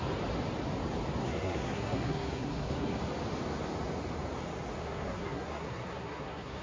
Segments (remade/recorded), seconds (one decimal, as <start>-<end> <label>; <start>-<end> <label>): 0.0-1.2 recorded; 1.2-3.0 remade; 3.0-4.8 recorded; 4.8-6.6 remade